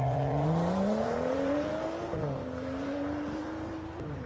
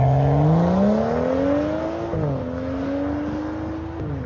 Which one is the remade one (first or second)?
first